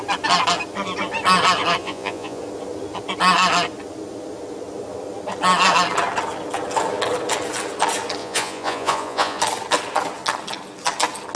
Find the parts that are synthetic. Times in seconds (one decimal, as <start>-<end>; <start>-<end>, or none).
1.8-2.4; 8.2-9.4